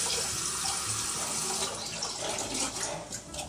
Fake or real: real